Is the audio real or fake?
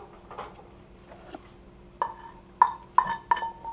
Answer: real